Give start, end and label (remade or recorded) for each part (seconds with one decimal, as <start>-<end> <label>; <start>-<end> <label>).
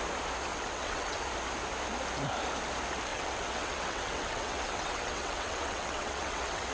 0.0-0.5 recorded; 0.5-1.2 remade; 1.2-3.1 recorded; 3.1-6.7 remade